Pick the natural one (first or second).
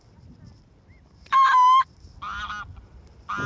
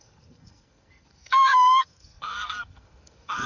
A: first